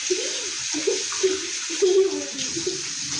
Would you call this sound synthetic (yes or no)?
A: no